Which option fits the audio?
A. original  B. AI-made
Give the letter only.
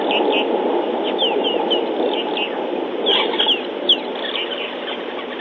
A